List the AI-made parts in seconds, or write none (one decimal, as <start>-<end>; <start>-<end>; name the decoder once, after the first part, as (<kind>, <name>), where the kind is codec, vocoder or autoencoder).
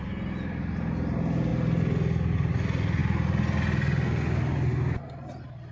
none